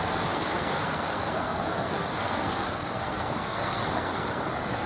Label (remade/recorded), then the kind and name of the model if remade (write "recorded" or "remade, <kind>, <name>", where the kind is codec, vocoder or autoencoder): remade, codec, SNAC